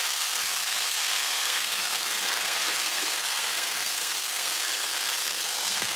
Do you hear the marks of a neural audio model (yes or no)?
yes